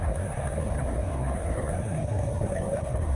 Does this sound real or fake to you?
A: fake